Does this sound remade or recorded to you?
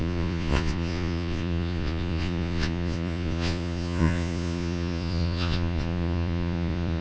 remade